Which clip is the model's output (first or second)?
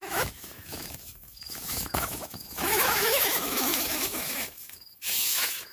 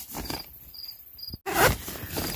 first